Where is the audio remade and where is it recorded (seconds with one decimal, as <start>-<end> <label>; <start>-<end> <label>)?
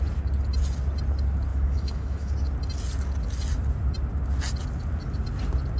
0.0-1.5 recorded; 1.5-2.3 remade; 2.3-5.8 recorded